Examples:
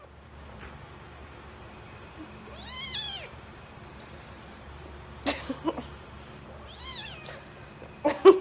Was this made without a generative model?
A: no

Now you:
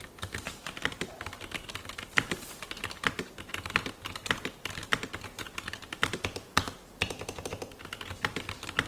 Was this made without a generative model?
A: yes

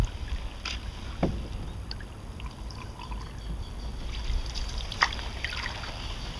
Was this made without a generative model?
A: yes